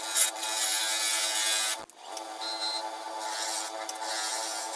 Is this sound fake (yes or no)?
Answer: no